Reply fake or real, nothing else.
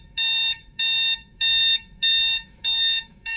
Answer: fake